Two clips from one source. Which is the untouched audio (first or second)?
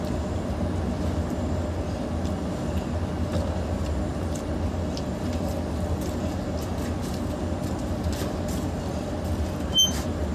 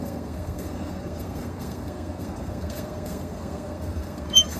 first